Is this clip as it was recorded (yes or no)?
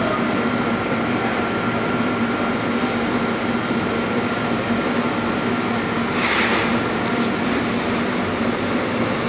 yes